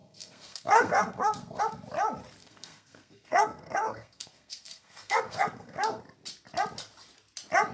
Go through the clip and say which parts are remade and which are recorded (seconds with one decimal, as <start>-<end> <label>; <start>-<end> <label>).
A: 0.0-1.6 remade; 1.6-2.4 recorded; 2.4-6.0 remade; 6.0-7.7 recorded